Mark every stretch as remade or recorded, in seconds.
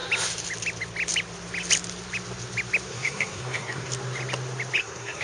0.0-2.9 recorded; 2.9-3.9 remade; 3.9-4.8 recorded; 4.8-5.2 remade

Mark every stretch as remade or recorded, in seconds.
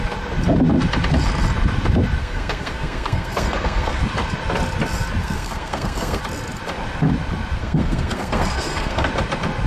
0.0-2.2 recorded; 2.2-4.0 remade; 4.0-5.2 recorded; 5.2-6.2 remade; 6.2-7.6 recorded; 7.6-9.1 remade; 9.1-9.7 recorded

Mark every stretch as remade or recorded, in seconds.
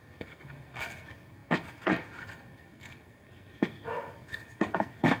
0.0-5.2 remade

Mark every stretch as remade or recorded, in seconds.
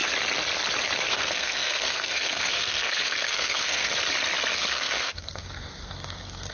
0.0-1.1 recorded; 1.1-3.9 remade; 3.9-4.7 recorded; 4.7-6.5 remade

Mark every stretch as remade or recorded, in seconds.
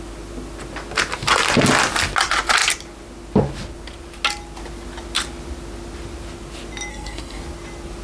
0.0-6.9 recorded; 6.9-7.4 remade; 7.4-8.0 recorded